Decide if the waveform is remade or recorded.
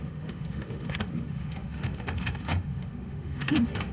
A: remade